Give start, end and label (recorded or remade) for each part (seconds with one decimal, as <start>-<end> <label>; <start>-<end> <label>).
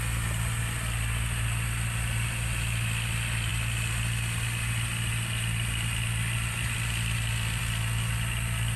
0.0-8.8 recorded